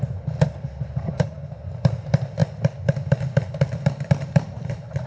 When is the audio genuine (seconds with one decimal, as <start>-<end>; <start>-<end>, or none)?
2.4-4.3